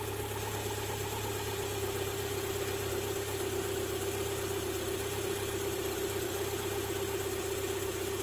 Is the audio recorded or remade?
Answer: recorded